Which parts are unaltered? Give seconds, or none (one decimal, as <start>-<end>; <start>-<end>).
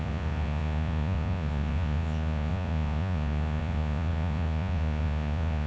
none